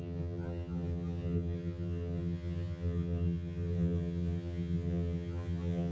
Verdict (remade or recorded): remade